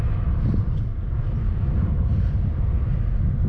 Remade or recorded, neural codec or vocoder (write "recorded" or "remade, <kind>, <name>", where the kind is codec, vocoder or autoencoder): recorded